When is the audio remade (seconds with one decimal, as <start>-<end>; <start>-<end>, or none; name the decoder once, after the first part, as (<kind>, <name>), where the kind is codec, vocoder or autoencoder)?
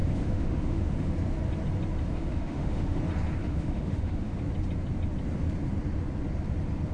0.0-1.1 (autoencoder, DAC-VAE); 2.1-3.0; 3.4-4.4